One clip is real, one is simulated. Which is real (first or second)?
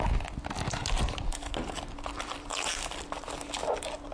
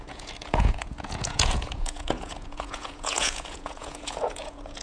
first